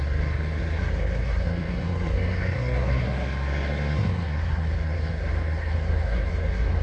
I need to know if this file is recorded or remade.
remade